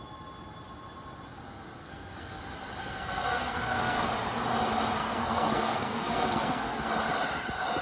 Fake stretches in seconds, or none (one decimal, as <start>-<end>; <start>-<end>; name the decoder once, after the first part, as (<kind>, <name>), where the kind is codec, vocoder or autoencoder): 1.8-2.4 (codec, SNAC); 2.8-4.1; 5.0-6.9